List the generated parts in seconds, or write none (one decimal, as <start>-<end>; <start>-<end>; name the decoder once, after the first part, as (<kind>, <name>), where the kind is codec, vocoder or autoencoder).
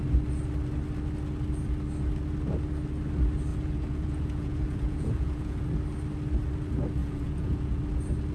3.5-5.6 (vocoder, Vocos); 7.0-7.8